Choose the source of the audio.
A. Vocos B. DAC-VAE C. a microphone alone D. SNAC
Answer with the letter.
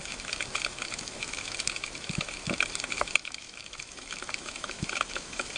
B